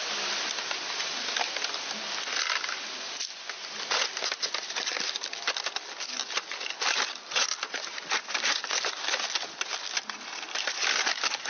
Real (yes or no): yes